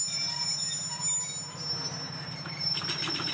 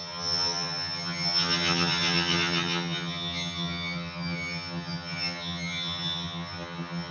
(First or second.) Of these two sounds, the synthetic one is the second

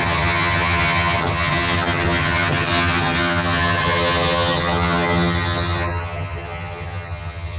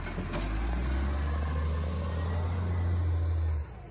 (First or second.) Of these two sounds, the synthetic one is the first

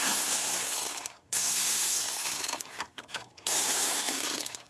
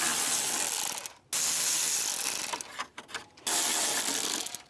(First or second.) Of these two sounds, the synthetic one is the first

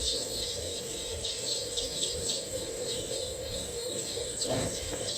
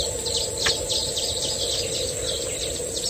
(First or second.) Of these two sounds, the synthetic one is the first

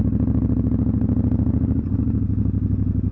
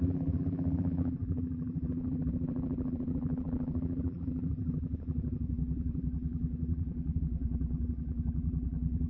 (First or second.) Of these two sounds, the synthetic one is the second